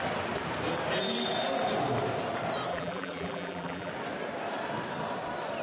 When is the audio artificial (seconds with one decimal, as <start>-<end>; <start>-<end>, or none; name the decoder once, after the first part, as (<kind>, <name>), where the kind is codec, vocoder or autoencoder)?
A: 2.7-3.9 (vocoder, BigVGAN v2)

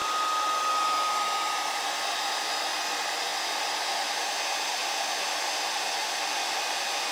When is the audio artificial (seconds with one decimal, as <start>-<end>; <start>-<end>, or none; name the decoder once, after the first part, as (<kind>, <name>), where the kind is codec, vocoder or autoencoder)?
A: none

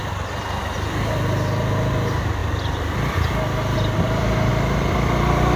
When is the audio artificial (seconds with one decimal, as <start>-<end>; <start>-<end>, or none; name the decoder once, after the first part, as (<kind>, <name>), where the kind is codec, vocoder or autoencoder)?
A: 2.4-4.5 (vocoder, BigVGAN v2)

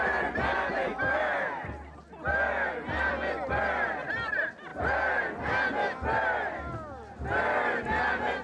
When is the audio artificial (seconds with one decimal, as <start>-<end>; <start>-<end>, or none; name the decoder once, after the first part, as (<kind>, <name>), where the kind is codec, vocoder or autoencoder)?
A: none

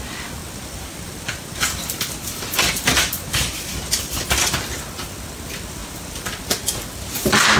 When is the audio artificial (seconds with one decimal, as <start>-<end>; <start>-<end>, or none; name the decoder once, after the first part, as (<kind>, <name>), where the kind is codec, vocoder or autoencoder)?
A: 0.4-4.5 (vocoder, BigVGAN v2); 5.8-6.4

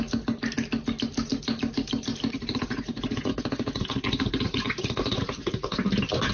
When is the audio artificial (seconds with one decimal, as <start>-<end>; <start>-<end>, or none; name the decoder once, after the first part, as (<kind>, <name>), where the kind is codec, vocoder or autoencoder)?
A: none